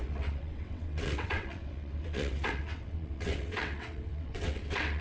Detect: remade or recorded remade